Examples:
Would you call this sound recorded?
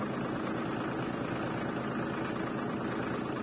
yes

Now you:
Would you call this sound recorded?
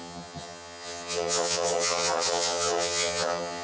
no